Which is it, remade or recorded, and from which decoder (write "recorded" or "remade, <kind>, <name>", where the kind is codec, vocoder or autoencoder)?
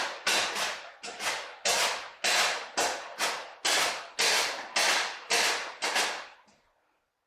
recorded